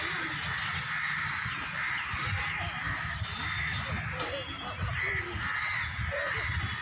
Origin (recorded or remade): recorded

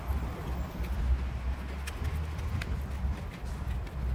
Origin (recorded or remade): recorded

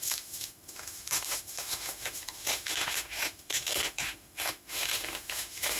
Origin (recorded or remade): remade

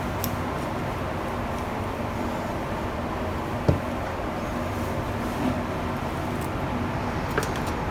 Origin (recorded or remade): recorded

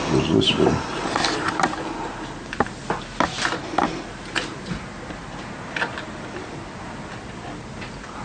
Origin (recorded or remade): recorded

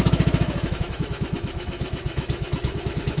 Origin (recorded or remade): remade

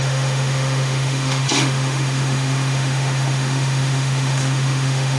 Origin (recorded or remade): remade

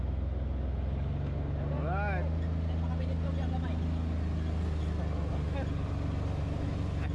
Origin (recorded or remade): recorded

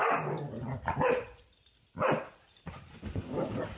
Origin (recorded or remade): recorded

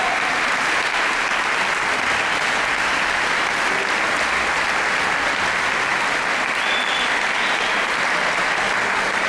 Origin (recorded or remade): recorded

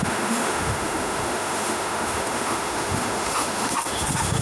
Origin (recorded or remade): remade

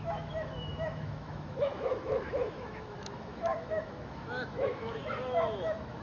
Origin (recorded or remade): remade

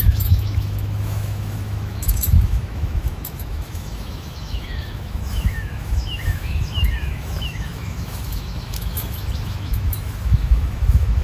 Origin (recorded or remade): remade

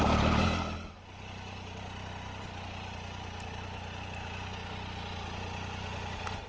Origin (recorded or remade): recorded